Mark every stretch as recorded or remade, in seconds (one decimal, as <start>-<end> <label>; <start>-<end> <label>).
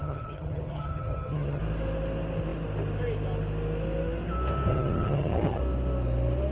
0.0-1.6 remade; 1.6-4.7 recorded; 4.7-5.6 remade; 5.6-6.5 recorded